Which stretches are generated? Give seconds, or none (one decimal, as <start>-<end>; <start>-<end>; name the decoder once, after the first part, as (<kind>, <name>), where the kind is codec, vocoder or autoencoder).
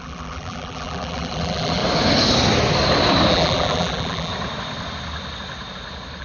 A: 0.0-1.8 (vocoder, BigVGAN v2); 3.3-4.3